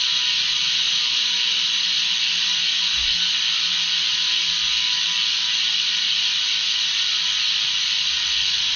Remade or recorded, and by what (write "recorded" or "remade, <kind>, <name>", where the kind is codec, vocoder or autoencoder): recorded